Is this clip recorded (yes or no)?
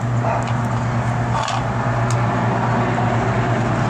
yes